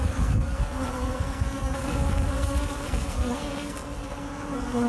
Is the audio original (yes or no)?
no